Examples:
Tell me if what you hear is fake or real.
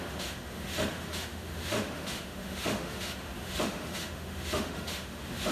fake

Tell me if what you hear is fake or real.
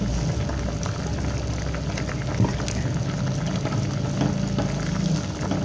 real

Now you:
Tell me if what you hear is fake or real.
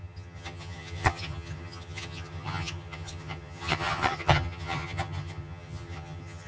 fake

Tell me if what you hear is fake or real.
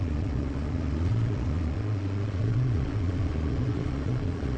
fake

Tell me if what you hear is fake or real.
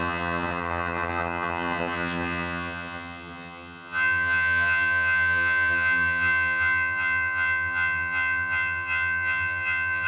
fake